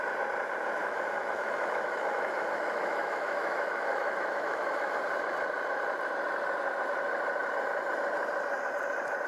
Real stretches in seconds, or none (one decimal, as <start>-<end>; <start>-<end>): 0.0-0.8; 5.0-9.3